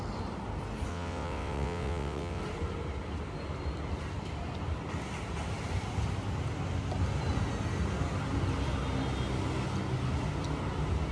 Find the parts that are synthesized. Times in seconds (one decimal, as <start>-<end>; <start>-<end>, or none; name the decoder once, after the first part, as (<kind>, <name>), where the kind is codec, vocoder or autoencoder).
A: 0.9-2.4 (vocoder, WaveNeXt)